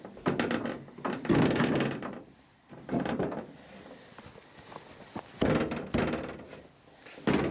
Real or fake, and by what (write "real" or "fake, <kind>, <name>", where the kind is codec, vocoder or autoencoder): real